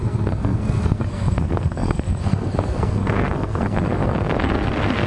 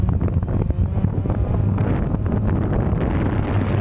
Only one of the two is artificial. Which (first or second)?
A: first